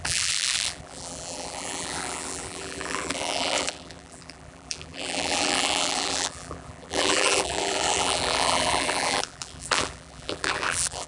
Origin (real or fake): fake